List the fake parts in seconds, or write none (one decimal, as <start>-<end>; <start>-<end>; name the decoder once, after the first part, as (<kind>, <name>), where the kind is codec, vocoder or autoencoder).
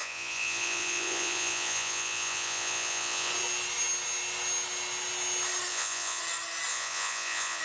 0.0-3.3 (vocoder, Vocos); 5.7-6.2; 6.7-7.6